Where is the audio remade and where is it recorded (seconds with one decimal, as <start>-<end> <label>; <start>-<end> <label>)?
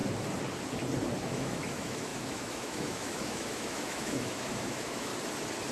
0.0-1.3 recorded; 1.3-5.1 remade; 5.1-5.7 recorded